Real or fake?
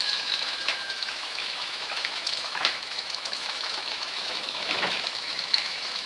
fake